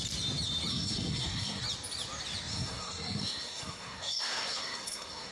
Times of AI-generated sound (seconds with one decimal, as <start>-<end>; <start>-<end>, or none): 0.7-1.6; 2.5-5.3